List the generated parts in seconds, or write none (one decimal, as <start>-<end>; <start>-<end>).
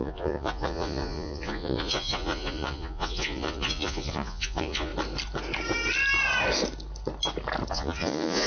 0.0-4.9; 7.7-8.5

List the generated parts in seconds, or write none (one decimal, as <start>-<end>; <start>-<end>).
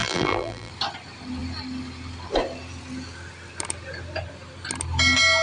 0.0-0.7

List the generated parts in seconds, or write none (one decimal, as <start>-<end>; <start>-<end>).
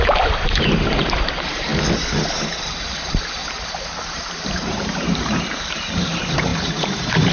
0.0-1.7; 2.6-3.4; 4.0-7.3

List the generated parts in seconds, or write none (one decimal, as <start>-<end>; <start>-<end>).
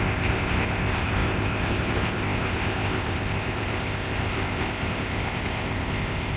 0.0-6.4